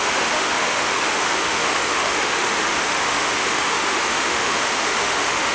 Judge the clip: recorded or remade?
remade